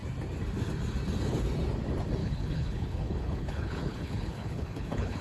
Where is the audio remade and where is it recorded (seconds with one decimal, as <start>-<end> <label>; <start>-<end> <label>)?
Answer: 0.0-2.2 recorded; 2.2-5.2 remade